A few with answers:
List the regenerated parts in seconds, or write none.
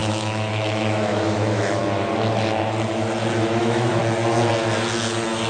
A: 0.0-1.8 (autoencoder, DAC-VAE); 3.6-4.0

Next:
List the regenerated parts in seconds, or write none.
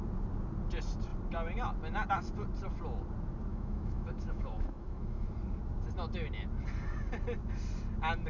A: 3.5-5.3 (autoencoder, DAC-VAE)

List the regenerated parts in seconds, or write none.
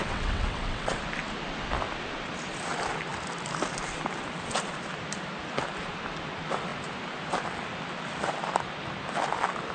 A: 0.0-1.0 (vocoder, WaveNeXt)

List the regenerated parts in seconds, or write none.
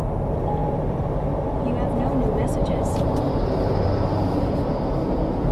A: 2.6-4.5 (vocoder, BigVGAN v2)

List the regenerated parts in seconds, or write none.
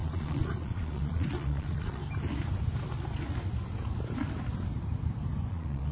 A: 0.0-2.0 (vocoder, Vocos); 5.5-5.9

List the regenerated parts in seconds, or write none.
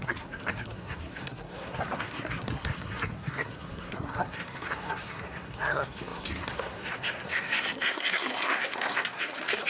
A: 0.0-9.7 (codec, SNAC)